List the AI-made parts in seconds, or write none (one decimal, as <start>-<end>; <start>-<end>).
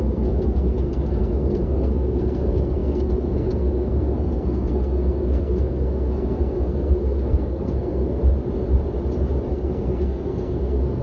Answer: 0.0-8.2; 9.5-11.0